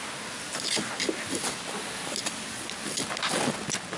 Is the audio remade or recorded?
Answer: recorded